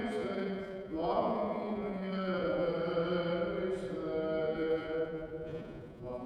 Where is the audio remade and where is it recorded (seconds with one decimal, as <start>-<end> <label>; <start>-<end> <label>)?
0.0-2.7 remade; 2.7-4.4 recorded; 4.4-6.3 remade